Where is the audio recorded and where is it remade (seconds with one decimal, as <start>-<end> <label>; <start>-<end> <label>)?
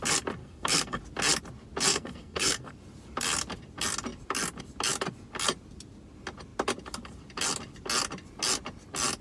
0.0-0.4 recorded; 0.4-1.0 remade; 1.0-1.9 recorded; 1.9-2.7 remade; 2.7-9.2 recorded